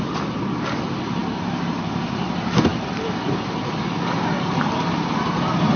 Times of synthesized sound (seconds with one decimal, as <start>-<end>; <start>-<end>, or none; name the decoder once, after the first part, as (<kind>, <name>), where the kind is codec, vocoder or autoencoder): none

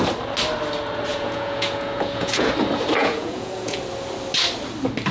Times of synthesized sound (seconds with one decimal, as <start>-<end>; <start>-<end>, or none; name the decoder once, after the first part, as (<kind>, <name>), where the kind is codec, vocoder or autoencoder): 1.1-2.5 (vocoder, Vocos); 3.0-3.8